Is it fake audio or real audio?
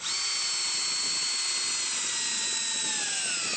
real